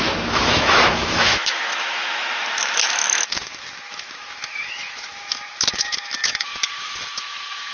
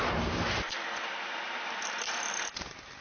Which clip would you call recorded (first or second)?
second